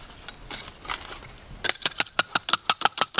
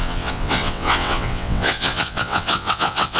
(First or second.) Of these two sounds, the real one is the first